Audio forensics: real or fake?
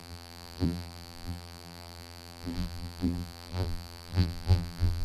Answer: fake